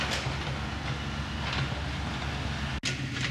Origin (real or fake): real